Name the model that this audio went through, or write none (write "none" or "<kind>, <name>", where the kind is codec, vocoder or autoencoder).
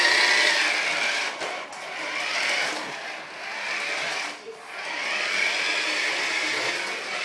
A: none